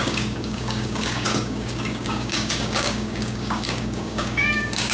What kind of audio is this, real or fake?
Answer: fake